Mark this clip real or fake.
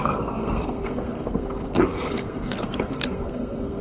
fake